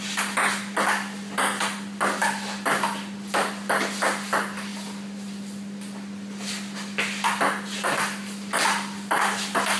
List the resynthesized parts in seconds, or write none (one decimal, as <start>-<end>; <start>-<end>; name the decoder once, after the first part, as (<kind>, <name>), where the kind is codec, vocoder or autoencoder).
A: none